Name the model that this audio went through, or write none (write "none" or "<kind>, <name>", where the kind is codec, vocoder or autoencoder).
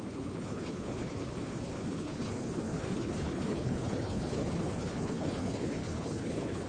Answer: codec, HILCodec